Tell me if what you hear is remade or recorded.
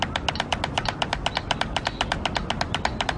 recorded